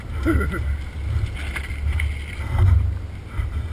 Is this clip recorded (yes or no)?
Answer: yes